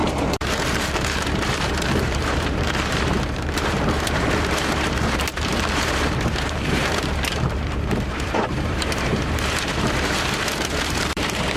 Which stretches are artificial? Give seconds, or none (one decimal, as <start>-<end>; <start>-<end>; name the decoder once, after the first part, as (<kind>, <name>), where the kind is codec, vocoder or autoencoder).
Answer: 0.0-11.6 (vocoder, BigVGAN v2)